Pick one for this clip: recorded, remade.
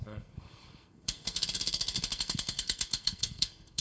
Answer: remade